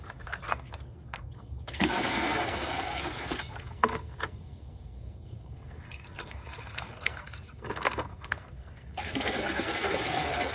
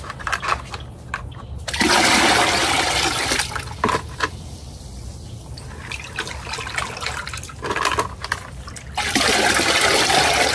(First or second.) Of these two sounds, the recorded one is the second